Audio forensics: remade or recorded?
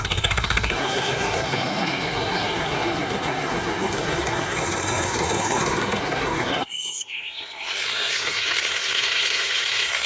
remade